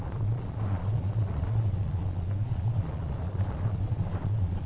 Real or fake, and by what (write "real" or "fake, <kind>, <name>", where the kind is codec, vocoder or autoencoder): fake, vocoder, Vocos